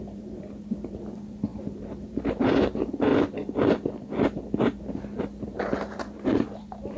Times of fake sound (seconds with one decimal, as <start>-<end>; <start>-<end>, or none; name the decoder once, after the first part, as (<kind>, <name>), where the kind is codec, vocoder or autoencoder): 0.0-3.1 (vocoder, BigVGAN v2); 5.2-7.0